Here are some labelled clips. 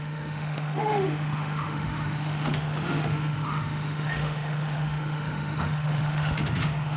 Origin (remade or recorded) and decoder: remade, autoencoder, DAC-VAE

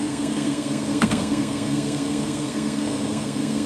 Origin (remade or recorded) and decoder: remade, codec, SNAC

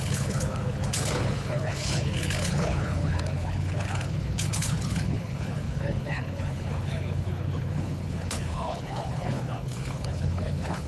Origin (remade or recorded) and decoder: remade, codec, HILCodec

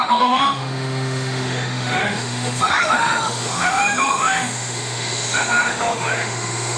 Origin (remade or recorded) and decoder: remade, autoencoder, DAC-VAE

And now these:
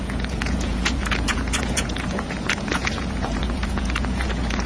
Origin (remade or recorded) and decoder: remade, vocoder, Vocos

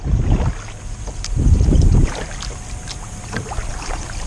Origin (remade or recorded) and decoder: recorded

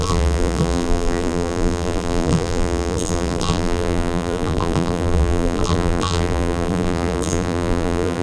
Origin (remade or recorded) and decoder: remade, vocoder, BigVGAN v2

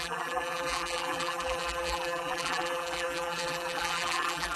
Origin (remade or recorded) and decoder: remade, vocoder, BigVGAN v2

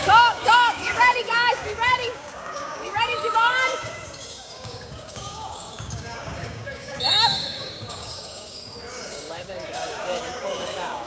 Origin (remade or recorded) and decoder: remade, codec, DAC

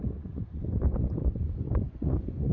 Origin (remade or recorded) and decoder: remade, vocoder, Vocos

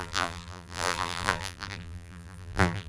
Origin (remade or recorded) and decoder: remade, vocoder, BigVGAN v2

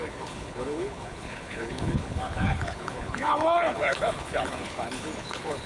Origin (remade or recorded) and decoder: remade, codec, HILCodec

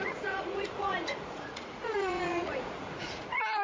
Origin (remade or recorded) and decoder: remade, vocoder, Vocos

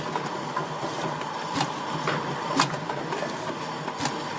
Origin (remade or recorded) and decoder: recorded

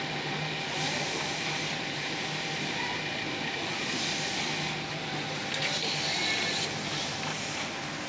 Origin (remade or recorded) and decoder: recorded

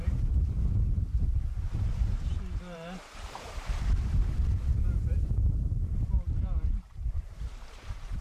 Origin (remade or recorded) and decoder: remade, vocoder, BigVGAN v2